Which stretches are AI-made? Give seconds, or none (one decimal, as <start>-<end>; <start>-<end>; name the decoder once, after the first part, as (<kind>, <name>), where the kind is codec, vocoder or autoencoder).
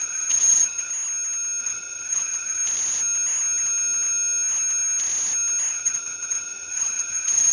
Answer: 0.0-0.9 (vocoder, HiFi-GAN); 1.6-2.6; 5.7-7.5